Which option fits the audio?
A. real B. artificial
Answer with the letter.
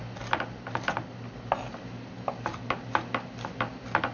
A